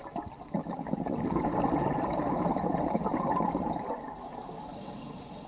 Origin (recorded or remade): recorded